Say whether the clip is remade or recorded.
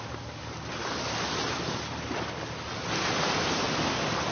recorded